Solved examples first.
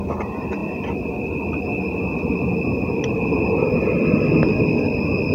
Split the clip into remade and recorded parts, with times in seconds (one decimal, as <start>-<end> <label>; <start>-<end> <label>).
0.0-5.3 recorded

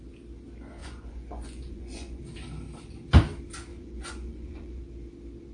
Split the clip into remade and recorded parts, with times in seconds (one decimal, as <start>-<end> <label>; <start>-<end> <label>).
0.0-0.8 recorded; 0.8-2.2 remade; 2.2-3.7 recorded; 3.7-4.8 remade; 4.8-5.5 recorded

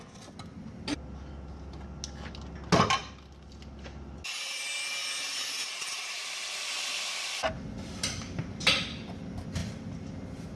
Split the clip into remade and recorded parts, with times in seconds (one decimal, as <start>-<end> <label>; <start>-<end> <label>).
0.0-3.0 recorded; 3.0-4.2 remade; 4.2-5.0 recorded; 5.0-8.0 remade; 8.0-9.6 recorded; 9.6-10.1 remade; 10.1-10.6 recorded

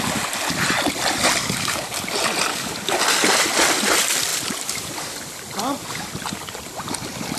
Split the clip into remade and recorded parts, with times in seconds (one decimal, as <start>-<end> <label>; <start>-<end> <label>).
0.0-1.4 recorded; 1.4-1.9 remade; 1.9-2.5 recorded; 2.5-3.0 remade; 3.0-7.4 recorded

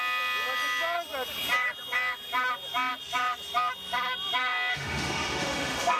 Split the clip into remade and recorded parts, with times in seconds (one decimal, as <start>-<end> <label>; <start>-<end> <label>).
0.0-4.7 recorded; 4.7-6.0 remade